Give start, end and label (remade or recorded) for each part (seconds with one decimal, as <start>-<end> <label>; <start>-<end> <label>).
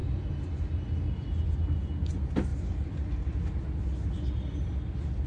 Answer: 0.0-0.6 remade; 0.6-2.5 recorded; 2.5-3.6 remade; 3.6-5.3 recorded